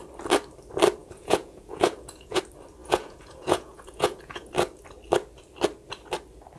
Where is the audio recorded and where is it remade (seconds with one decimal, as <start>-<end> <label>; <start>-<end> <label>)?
0.0-1.0 recorded; 1.0-2.4 remade; 2.4-2.8 recorded; 2.8-4.5 remade; 4.5-6.6 recorded